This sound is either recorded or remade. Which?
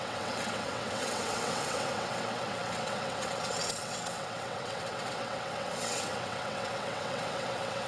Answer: remade